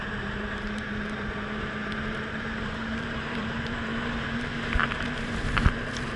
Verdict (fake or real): fake